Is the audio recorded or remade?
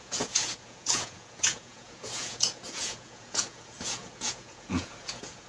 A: remade